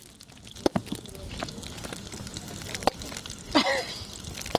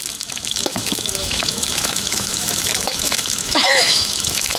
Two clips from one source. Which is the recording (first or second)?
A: first